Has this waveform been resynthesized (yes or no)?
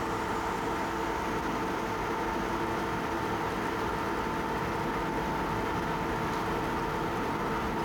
no